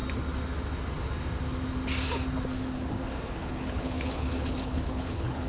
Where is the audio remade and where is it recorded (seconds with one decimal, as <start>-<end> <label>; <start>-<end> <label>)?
0.0-3.3 recorded; 3.3-5.5 remade